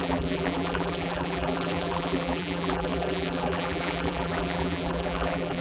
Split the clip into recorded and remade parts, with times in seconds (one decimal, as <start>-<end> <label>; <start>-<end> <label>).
0.0-5.6 remade